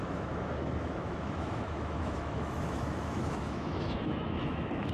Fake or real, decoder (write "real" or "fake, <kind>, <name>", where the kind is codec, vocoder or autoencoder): fake, autoencoder, DAC-VAE